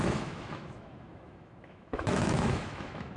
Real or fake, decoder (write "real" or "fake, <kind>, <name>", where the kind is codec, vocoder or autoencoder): fake, autoencoder, DAC-VAE